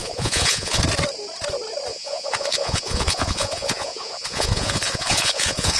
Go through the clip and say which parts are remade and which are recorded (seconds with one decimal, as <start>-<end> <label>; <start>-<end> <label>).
0.0-0.8 remade; 0.8-1.9 recorded; 1.9-5.8 remade